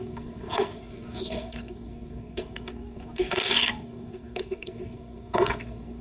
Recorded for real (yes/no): no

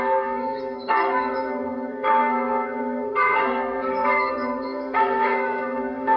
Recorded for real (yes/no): no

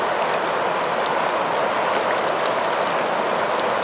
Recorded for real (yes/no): yes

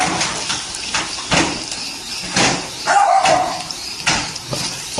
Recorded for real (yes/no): yes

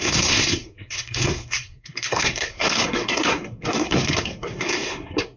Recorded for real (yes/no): no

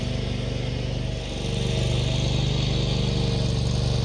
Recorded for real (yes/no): yes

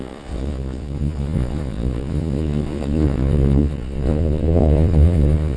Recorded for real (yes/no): no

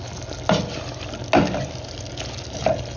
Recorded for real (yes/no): yes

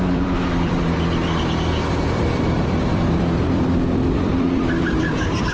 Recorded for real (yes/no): no